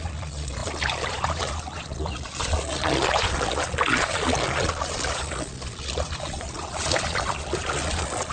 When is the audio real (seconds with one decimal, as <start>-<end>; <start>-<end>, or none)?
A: none